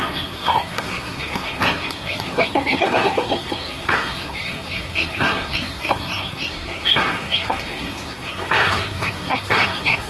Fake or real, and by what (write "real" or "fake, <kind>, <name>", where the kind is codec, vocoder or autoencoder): fake, codec, SNAC